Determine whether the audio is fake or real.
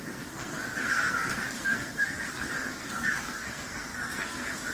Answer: fake